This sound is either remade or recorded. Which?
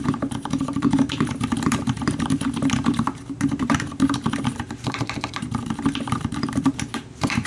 remade